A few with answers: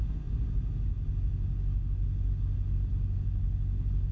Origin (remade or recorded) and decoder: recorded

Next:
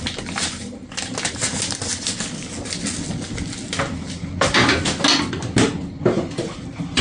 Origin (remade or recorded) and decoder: recorded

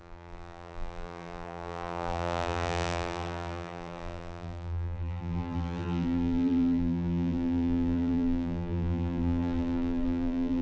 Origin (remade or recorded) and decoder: remade, vocoder, BigVGAN v2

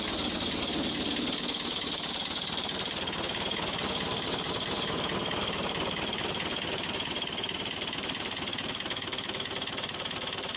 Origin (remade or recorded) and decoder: recorded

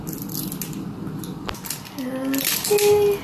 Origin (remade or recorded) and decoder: recorded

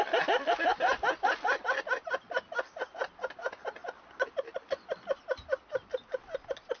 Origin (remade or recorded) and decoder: recorded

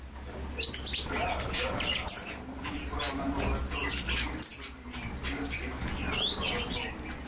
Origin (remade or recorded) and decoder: recorded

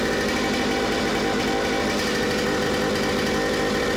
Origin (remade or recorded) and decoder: recorded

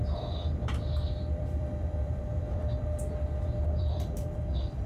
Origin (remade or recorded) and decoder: remade, vocoder, BigVGAN v2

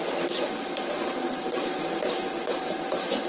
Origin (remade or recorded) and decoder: remade, vocoder, BigVGAN v2